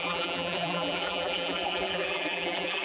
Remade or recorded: remade